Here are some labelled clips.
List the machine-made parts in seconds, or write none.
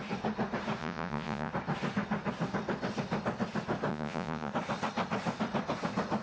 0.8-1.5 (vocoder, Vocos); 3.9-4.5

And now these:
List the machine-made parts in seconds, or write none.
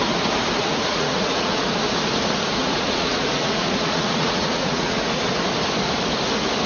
0.6-1.7 (vocoder, Vocos); 2.5-5.2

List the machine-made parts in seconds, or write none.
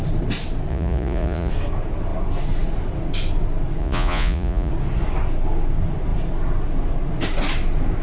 0.7-1.5 (vocoder, Vocos); 3.8-4.7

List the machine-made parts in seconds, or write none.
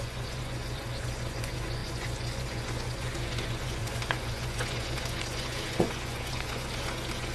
0.0-7.3 (vocoder, Vocos)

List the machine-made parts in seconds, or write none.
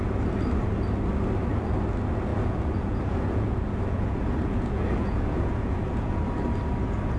2.3-6.2 (vocoder, Vocos)